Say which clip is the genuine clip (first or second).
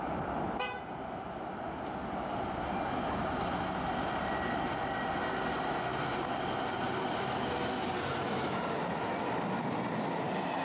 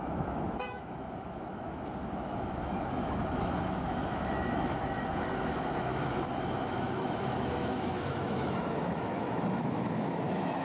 first